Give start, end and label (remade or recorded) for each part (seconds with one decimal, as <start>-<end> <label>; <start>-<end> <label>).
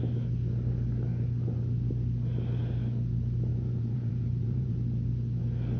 0.0-3.5 recorded; 3.5-4.7 remade; 4.7-5.8 recorded